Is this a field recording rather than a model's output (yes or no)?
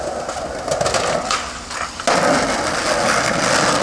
yes